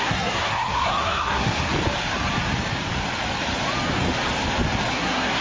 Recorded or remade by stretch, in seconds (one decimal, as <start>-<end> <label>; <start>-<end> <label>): 0.0-1.7 remade; 1.7-4.9 recorded; 4.9-5.4 remade